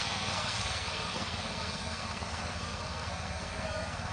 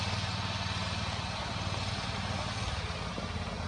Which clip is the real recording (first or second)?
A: second